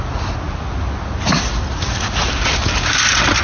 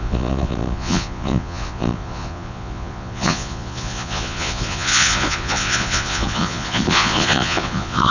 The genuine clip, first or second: first